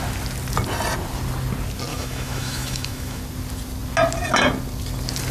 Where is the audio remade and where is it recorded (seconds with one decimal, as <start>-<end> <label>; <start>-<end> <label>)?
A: 0.0-1.9 recorded; 1.9-3.2 remade; 3.2-5.3 recorded